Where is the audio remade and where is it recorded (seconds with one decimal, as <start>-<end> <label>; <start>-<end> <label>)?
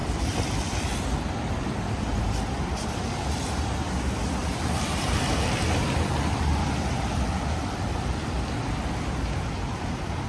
0.0-2.2 remade; 2.2-4.4 recorded; 4.4-8.8 remade; 8.8-10.3 recorded